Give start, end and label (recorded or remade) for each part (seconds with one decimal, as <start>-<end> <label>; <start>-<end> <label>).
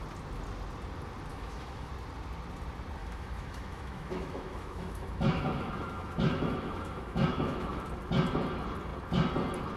0.0-1.3 recorded; 1.3-1.9 remade; 1.9-3.0 recorded; 3.0-7.9 remade; 7.9-9.8 recorded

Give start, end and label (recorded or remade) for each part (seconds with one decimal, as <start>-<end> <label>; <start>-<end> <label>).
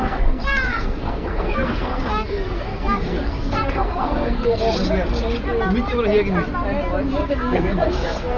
0.0-4.6 remade; 4.6-7.2 recorded; 7.2-8.4 remade